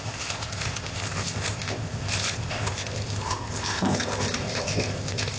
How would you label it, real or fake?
fake